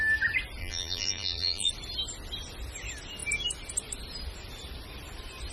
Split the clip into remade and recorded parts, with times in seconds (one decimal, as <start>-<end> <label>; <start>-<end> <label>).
0.0-0.6 recorded; 0.6-1.7 remade; 1.7-5.5 recorded

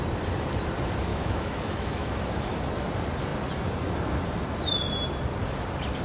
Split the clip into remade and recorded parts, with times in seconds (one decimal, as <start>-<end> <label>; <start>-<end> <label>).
0.0-1.1 recorded; 1.1-2.6 remade; 2.6-6.0 recorded